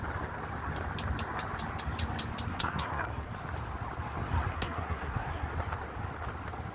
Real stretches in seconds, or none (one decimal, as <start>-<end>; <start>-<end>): 0.0-2.5; 3.3-4.5; 5.5-6.7